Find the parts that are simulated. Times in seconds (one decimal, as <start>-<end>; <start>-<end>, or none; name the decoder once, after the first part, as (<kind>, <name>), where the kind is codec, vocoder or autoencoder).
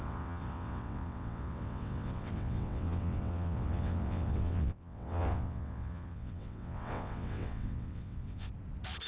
0.0-8.5 (vocoder, WaveNeXt)